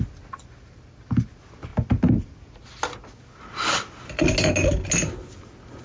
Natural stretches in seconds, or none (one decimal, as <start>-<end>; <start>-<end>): 0.0-5.8